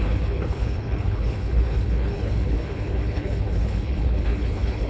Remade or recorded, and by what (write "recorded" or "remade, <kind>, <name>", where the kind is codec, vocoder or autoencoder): remade, codec, HILCodec